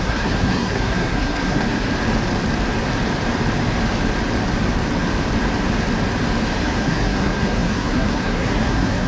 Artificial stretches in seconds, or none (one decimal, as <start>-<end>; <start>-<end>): 0.0-1.9; 6.6-9.1

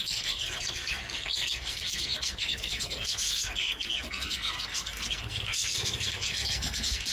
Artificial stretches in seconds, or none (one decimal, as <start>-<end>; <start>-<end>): 0.0-7.1